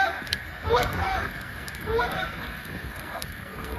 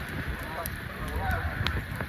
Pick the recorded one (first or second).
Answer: second